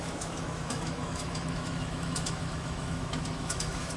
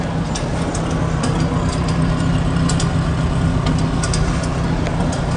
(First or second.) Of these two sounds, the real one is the second